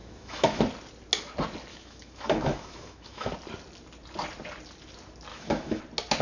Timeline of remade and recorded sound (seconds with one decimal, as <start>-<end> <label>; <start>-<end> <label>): 0.0-0.6 remade; 0.6-1.7 recorded; 1.7-3.3 remade; 3.3-5.3 recorded; 5.3-5.8 remade; 5.8-6.2 recorded